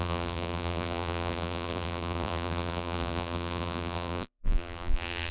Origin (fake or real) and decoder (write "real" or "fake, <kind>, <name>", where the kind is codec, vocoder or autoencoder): fake, vocoder, BigVGAN v2